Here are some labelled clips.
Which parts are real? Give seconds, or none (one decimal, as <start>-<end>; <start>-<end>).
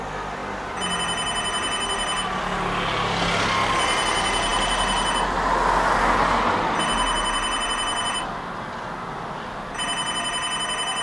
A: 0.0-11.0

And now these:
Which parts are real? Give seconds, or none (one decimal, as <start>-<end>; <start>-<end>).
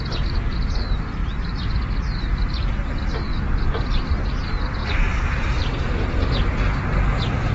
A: 0.0-1.2; 2.2-4.8; 5.8-7.5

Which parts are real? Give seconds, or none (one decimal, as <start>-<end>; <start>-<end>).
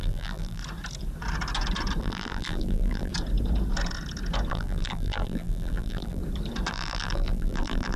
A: 0.6-2.0; 3.1-4.5; 6.2-6.7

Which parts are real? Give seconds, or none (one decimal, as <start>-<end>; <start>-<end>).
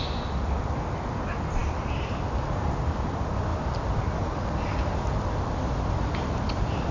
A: 0.0-1.6; 2.5-3.5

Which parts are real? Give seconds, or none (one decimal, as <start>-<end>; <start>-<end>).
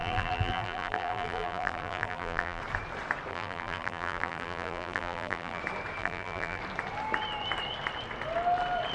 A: 2.6-3.3; 5.6-6.0; 6.6-8.9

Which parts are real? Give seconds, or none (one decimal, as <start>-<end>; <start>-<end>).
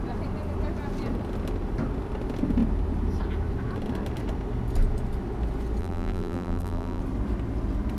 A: 0.0-5.8; 7.0-8.0